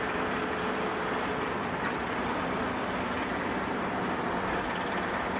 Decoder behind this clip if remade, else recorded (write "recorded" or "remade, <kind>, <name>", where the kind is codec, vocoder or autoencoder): recorded